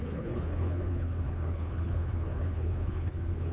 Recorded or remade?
remade